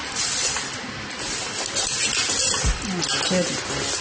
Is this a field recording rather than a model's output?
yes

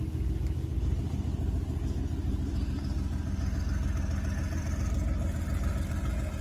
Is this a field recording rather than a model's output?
yes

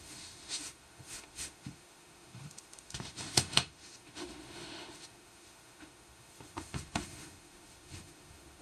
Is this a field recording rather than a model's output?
no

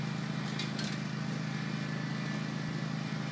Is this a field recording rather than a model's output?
yes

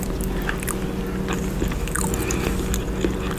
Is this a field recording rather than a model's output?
yes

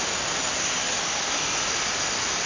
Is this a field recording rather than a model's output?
yes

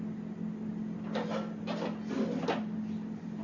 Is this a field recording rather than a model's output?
yes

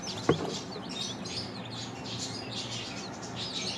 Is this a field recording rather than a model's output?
yes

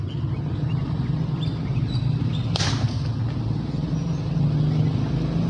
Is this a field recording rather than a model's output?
yes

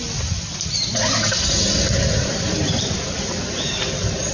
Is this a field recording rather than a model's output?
yes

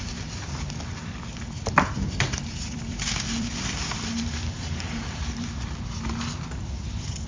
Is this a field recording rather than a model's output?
no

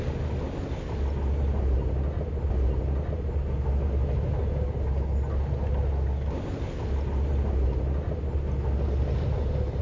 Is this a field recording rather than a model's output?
yes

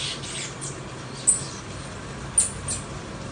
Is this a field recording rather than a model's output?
yes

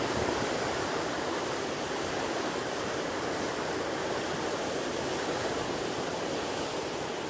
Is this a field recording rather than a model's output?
yes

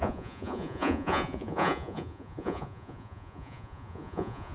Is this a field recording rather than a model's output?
no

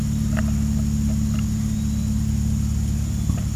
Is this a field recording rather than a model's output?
yes